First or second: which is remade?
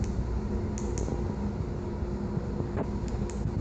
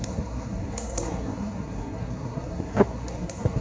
second